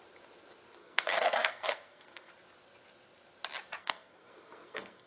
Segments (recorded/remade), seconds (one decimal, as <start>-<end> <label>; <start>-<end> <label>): 0.0-0.8 recorded; 0.8-2.3 remade; 2.3-3.8 recorded; 3.8-5.1 remade